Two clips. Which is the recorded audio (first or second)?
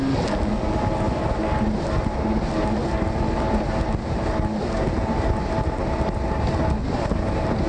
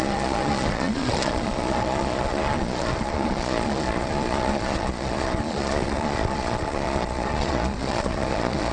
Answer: first